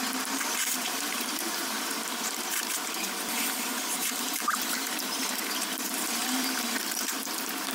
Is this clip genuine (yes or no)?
no